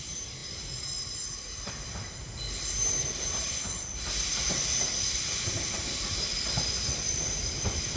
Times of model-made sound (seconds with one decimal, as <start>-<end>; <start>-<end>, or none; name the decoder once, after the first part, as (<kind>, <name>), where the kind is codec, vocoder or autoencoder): none